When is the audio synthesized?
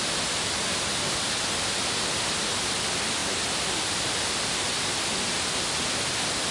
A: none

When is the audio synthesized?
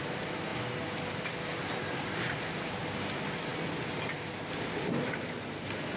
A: none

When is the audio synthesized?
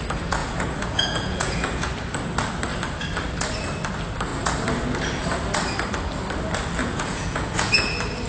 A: 0.4-1.9 (vocoder, Vocos); 6.8-7.7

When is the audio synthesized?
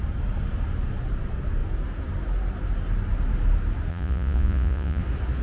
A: 3.9-5.0 (vocoder, Vocos)